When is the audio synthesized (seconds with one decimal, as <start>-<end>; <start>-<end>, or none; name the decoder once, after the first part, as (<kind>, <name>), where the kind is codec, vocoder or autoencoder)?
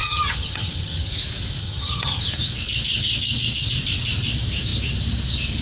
0.0-1.1 (vocoder, HiFi-GAN); 1.6-2.2